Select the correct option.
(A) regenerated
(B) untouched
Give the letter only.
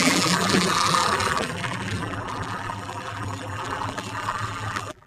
A